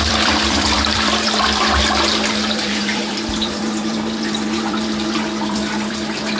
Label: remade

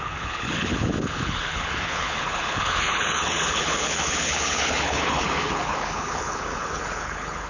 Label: remade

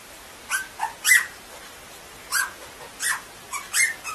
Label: recorded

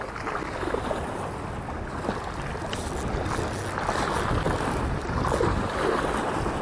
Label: recorded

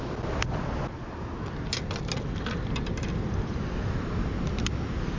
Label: recorded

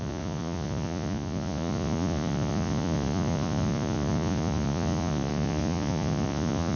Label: remade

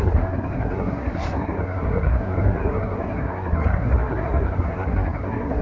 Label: remade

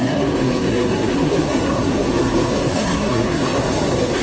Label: remade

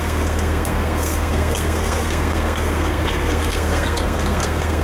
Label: remade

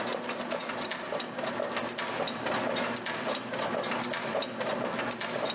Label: recorded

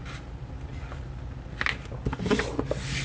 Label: recorded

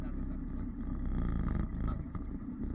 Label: recorded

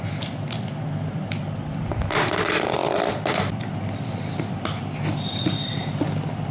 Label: recorded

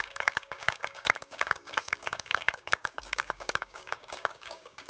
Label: remade